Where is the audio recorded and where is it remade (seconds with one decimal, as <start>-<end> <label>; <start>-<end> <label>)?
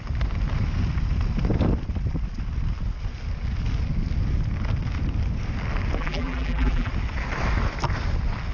0.0-6.0 recorded; 6.0-6.9 remade; 6.9-8.5 recorded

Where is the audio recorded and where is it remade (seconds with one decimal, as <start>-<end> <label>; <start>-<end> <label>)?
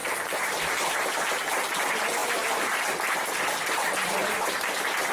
0.0-4.2 recorded; 4.2-5.1 remade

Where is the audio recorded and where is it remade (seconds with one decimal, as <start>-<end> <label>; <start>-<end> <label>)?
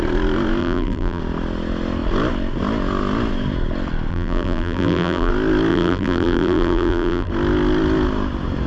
0.0-0.6 recorded; 0.6-1.2 remade; 1.2-4.1 recorded; 4.1-5.3 remade; 5.3-5.7 recorded; 5.7-7.3 remade; 7.3-8.7 recorded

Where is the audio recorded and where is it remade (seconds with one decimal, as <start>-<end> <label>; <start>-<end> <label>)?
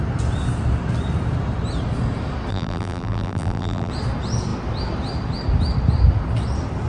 0.0-2.5 recorded; 2.5-3.9 remade; 3.9-6.9 recorded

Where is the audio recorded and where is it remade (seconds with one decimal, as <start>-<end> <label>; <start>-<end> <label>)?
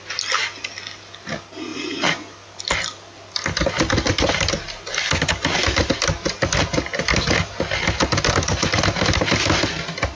0.0-10.2 recorded